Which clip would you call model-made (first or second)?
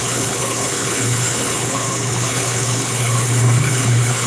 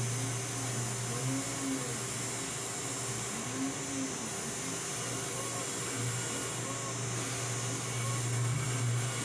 first